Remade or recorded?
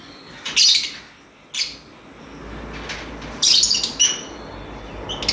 recorded